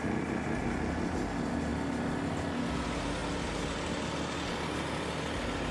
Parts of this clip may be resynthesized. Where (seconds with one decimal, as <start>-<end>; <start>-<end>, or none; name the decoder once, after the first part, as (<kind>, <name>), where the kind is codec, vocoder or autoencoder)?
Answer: none